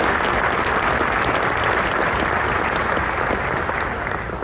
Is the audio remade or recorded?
recorded